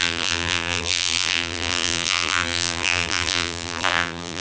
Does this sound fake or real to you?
fake